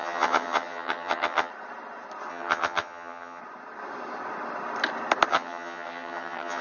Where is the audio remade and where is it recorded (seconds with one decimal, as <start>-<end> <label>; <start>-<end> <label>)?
0.0-1.5 remade; 1.5-2.3 recorded; 2.3-3.4 remade; 3.4-5.3 recorded; 5.3-6.6 remade